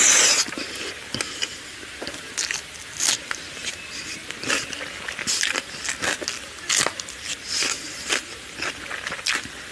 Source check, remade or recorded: recorded